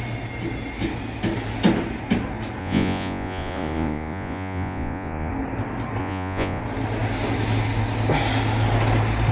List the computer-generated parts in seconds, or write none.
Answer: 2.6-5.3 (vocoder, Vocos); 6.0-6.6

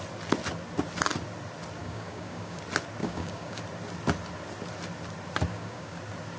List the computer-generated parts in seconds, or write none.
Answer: 1.8-2.6 (codec, DAC); 3.0-3.6; 5.5-6.0

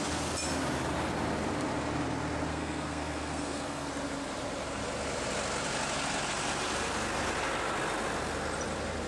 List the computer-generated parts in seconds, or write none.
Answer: 2.5-3.9 (codec, SNAC)

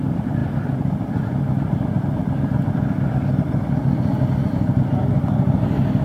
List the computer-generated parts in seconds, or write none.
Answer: none

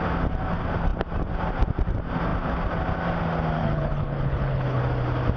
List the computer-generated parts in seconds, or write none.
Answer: 3.6-4.8 (codec, HILCodec)

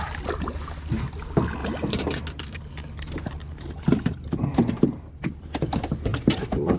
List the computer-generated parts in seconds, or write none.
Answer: 1.6-5.5 (vocoder, BigVGAN v2); 6.1-6.8

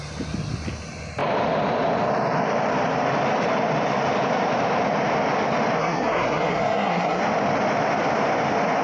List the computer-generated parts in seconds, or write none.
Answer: 5.8-7.2 (codec, SNAC)

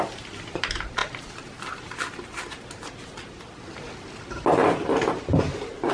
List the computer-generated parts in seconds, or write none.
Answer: none